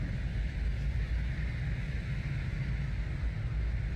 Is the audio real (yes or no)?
yes